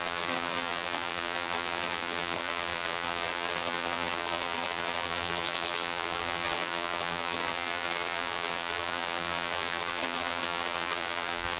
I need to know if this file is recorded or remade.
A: remade